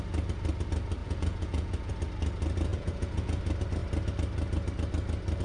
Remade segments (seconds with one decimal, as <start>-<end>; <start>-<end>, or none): 1.0-1.9; 2.7-3.4